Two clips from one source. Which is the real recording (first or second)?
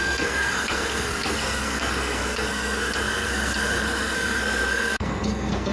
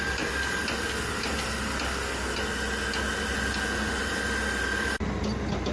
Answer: second